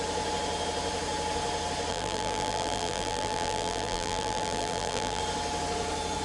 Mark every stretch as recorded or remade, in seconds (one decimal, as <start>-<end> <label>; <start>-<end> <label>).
0.0-1.9 recorded; 1.9-5.2 remade; 5.2-6.2 recorded

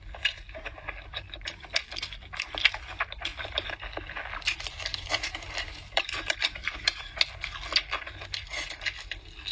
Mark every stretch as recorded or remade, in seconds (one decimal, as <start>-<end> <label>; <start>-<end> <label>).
0.0-4.9 recorded; 4.9-7.0 remade; 7.0-9.5 recorded

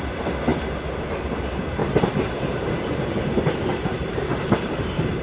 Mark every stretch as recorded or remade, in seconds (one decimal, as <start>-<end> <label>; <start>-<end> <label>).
0.0-1.8 recorded; 1.8-5.2 remade